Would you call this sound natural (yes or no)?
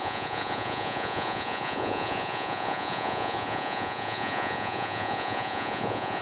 no